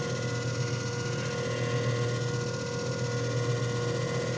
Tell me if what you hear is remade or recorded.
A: recorded